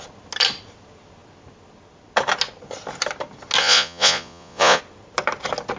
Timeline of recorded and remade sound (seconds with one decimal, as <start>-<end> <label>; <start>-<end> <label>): 0.0-3.6 recorded; 3.6-4.8 remade; 4.8-5.8 recorded